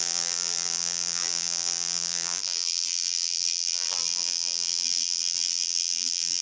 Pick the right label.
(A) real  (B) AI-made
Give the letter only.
B